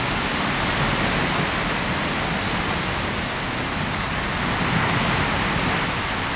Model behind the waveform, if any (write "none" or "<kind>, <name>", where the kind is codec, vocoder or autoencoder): none